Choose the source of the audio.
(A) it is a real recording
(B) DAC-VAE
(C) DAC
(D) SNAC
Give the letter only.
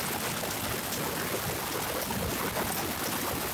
A